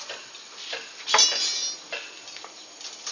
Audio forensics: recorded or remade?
recorded